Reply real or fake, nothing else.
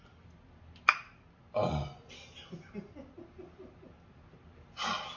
real